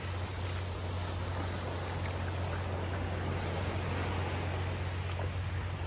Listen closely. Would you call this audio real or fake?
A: real